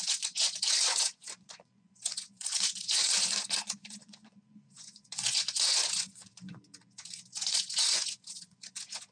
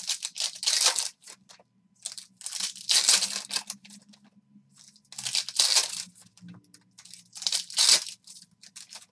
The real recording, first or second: second